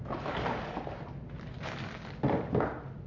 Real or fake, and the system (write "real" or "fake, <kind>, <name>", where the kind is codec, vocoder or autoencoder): real